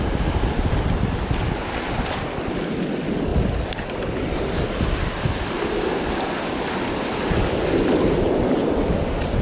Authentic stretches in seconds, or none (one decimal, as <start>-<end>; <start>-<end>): 0.0-3.3; 7.3-9.4